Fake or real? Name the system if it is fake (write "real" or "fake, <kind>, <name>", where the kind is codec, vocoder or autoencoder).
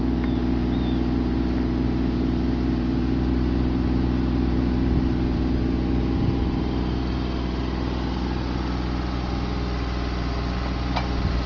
real